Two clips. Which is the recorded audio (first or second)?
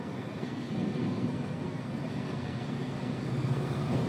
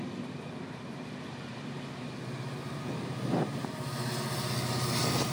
second